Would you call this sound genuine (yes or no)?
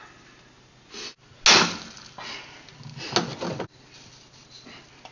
yes